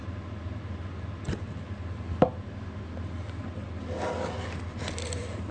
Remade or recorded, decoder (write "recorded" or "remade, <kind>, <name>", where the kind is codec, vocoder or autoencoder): recorded